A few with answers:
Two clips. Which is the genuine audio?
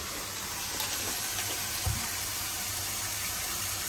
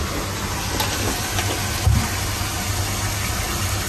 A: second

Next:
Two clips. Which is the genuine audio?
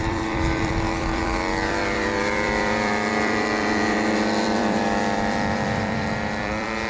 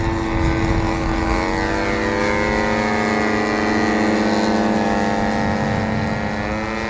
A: second